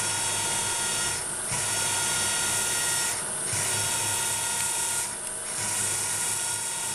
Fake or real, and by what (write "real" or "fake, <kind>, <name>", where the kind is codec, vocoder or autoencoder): real